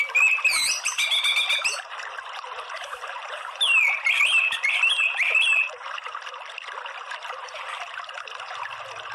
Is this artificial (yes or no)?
no